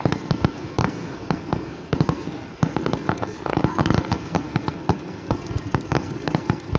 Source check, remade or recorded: remade